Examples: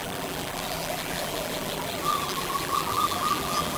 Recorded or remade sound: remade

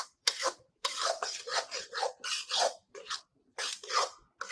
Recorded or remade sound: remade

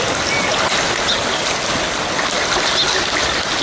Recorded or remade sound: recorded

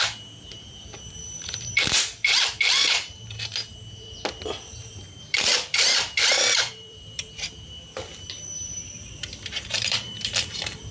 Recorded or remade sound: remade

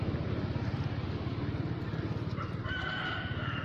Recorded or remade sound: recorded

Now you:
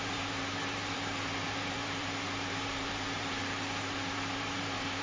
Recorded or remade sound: remade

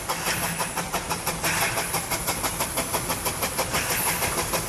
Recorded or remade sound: remade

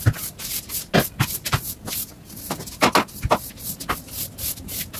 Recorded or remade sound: recorded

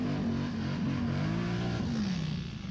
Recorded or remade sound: recorded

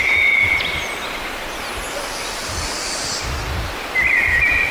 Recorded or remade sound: recorded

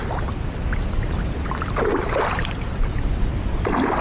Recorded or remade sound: recorded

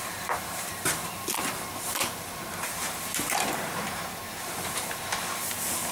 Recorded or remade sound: remade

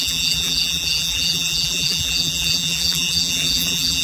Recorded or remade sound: remade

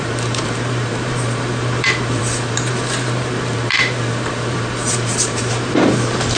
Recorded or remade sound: remade